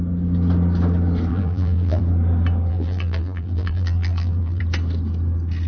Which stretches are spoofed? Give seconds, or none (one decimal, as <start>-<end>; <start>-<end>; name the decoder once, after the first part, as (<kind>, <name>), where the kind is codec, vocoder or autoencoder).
1.3-2.0 (vocoder, BigVGAN v2); 2.7-4.6